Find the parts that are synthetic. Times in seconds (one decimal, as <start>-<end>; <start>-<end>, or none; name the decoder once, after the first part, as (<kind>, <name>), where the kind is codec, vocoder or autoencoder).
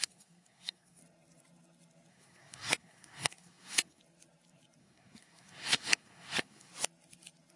0.0-1.0 (codec, SNAC); 2.1-4.0; 4.8-6.7